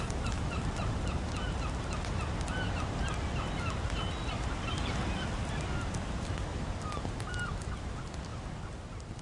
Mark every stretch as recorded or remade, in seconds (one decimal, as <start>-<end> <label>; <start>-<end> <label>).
0.0-9.2 recorded